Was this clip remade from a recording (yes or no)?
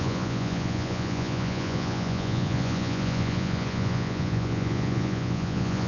yes